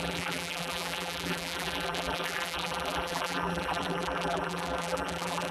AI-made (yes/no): yes